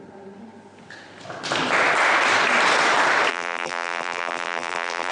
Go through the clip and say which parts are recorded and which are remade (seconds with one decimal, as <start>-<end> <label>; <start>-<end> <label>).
0.0-3.3 recorded; 3.3-5.1 remade